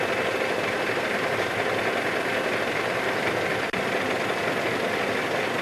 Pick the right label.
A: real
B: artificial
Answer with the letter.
A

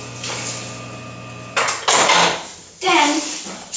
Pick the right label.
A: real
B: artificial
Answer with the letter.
A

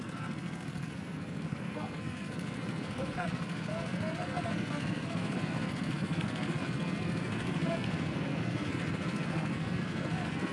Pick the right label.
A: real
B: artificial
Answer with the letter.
B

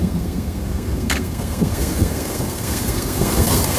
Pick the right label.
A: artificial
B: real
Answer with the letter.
A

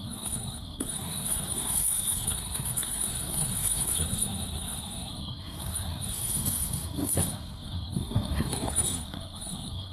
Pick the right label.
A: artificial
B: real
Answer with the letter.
A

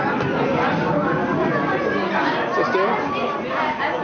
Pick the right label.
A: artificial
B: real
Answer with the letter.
B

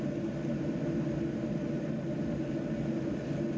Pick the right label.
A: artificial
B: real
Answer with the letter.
B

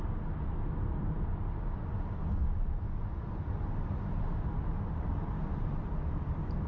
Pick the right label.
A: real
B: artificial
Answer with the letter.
A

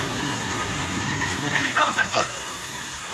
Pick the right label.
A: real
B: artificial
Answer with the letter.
B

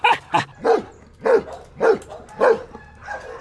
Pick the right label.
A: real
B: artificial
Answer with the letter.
A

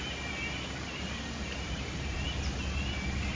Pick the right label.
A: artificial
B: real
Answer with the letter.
B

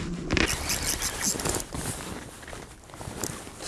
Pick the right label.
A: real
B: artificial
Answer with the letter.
A